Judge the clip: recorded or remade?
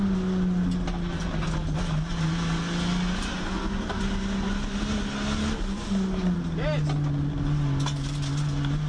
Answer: recorded